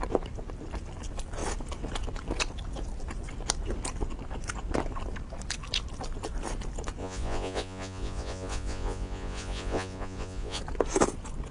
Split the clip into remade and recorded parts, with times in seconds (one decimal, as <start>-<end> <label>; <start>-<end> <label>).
0.0-7.0 recorded; 7.0-10.6 remade; 10.6-11.5 recorded